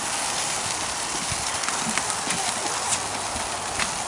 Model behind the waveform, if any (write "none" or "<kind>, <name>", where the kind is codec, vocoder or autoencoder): none